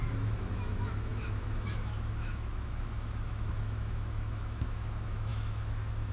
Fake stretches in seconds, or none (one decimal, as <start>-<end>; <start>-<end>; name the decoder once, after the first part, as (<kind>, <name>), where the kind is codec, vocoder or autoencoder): 0.0-6.1 (autoencoder, DAC-VAE)

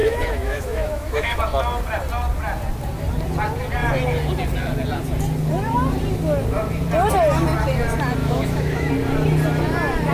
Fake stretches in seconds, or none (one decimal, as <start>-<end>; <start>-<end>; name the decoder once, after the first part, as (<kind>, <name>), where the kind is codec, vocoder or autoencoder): 0.0-1.4 (autoencoder, DAC-VAE); 8.2-8.9

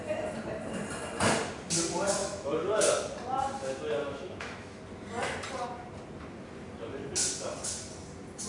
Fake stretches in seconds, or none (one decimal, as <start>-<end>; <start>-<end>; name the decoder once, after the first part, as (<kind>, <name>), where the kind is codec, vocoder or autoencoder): 2.2-2.8 (autoencoder, DAC-VAE); 4.0-4.8

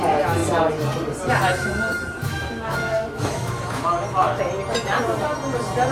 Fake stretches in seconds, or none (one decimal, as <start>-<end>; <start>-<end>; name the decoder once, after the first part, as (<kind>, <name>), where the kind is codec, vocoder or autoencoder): 2.2-4.4 (autoencoder, DAC-VAE)

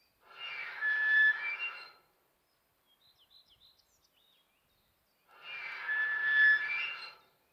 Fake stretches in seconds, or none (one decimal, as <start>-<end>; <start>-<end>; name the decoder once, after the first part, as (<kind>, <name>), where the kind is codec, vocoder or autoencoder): 0.6-1.5 (autoencoder, DAC-VAE)